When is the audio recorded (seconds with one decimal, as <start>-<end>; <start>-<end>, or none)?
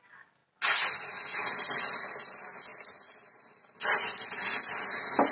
0.0-5.3